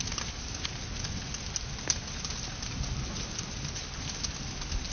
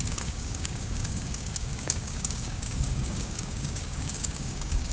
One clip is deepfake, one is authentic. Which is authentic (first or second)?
first